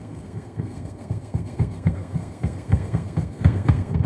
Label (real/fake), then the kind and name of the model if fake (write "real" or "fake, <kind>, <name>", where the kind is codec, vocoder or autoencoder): fake, codec, SNAC